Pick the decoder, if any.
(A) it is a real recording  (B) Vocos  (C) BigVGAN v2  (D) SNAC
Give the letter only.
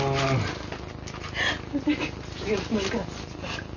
A